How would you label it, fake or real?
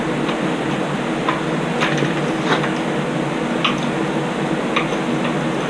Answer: real